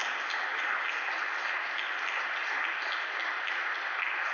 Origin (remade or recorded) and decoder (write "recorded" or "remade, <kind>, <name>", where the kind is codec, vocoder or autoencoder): recorded